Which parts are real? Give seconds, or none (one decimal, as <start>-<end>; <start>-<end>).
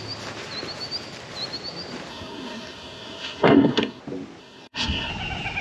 0.0-2.1; 4.0-4.4; 5.1-5.6